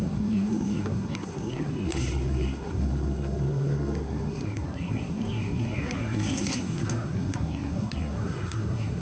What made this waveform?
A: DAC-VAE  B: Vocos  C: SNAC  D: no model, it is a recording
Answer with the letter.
C